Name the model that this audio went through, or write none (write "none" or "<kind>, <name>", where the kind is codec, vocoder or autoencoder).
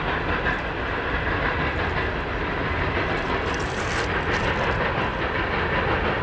none